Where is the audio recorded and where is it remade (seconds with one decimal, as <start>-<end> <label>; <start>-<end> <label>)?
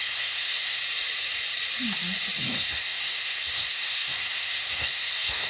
0.0-0.8 remade; 0.8-2.4 recorded; 2.4-5.5 remade